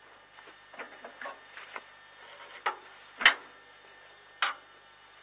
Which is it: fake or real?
real